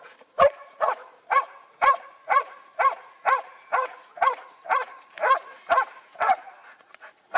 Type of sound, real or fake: fake